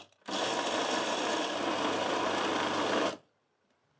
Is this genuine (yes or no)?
yes